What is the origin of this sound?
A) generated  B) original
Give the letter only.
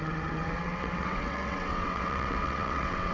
A